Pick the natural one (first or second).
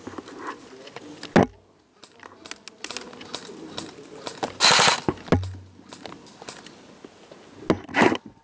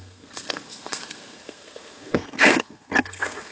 first